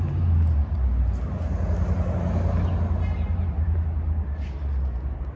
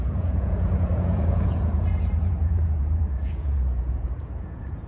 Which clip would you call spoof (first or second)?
second